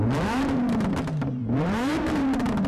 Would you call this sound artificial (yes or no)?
yes